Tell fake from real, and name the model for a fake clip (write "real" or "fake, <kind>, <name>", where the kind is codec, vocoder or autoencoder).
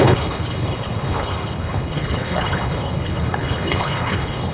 fake, codec, HILCodec